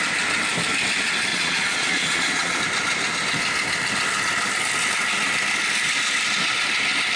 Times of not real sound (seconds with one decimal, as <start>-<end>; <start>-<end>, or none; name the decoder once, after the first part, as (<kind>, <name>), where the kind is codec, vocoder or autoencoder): 1.3-2.6 (vocoder, Vocos)

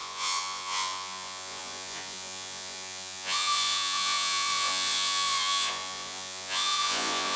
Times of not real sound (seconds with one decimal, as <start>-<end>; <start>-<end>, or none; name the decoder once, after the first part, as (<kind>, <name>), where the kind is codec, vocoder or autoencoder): 0.0-7.4 (vocoder, Vocos)

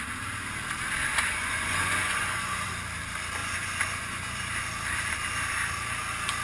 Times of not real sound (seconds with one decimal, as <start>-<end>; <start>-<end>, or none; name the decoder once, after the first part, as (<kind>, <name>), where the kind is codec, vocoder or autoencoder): 1.1-2.7 (vocoder, Vocos); 3.4-4.5

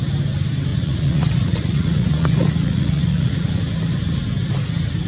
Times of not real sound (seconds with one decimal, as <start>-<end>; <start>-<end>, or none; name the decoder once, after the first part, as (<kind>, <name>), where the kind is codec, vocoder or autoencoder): 0.7-3.6 (vocoder, Vocos)

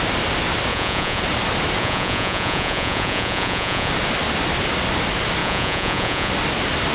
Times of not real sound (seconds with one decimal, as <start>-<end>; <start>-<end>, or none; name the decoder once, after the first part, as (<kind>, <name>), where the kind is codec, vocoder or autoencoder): 0.7-1.2 (vocoder, Vocos); 1.8-3.9; 5.4-6.3

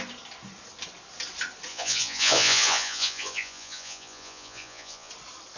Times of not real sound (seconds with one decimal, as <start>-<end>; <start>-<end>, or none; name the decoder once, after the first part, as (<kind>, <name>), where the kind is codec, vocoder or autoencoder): 1.7-5.1 (vocoder, Vocos)

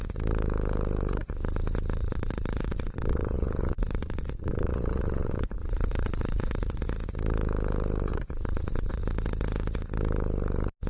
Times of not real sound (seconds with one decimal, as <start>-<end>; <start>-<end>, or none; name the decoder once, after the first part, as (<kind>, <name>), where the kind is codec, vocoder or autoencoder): 2.0-6.8 (vocoder, Vocos); 8.1-9.0